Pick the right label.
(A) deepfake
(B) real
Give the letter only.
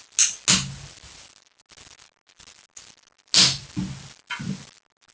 B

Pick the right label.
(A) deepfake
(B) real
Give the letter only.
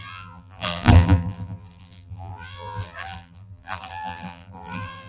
A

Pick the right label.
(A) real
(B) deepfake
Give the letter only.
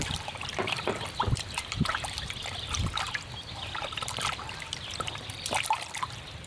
B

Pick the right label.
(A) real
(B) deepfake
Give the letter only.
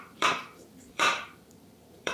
B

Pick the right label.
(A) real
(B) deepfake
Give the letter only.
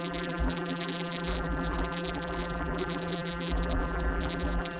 B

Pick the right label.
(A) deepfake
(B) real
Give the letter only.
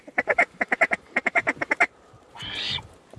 A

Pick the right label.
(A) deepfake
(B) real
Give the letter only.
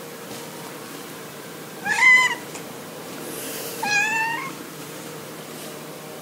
A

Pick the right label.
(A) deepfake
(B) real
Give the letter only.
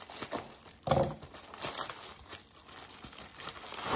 B